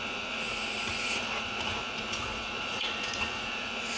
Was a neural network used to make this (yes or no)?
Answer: yes